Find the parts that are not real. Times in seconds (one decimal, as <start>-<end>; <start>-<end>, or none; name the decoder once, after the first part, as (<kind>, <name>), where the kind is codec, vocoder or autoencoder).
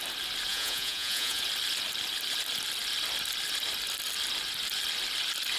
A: 0.5-1.4 (vocoder, Vocos)